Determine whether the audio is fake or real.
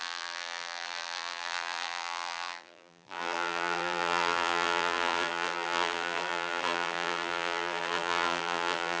fake